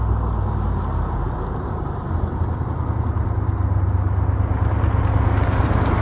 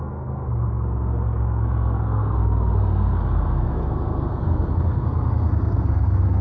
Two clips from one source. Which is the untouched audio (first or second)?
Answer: first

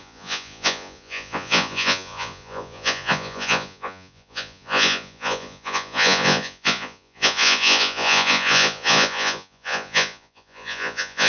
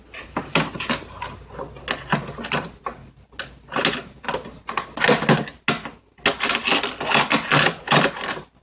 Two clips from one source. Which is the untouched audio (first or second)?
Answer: second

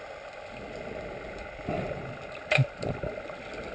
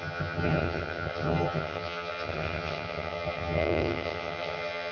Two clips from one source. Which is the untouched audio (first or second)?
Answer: first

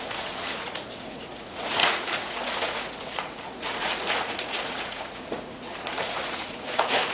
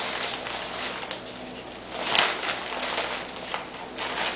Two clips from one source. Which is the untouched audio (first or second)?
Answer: second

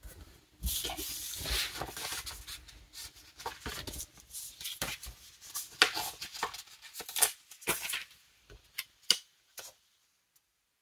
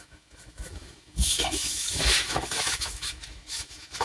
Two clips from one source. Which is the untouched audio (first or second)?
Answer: first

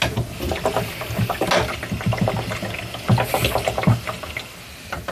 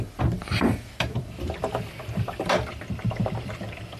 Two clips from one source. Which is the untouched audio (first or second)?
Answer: first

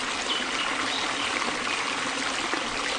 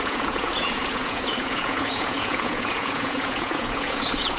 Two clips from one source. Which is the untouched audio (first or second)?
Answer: first